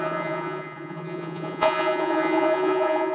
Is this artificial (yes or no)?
yes